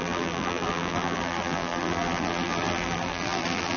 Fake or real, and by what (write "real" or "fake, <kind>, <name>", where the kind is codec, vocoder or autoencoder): fake, vocoder, BigVGAN v2